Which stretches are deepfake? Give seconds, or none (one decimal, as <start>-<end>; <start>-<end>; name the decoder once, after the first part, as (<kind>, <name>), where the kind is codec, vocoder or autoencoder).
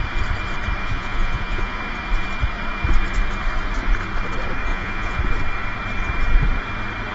0.8-1.8 (vocoder, Vocos); 4.7-5.2